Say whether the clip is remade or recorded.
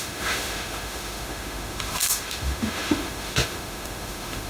remade